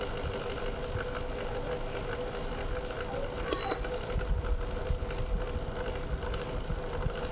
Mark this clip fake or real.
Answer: real